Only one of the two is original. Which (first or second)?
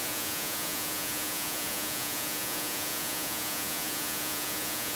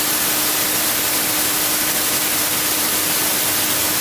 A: second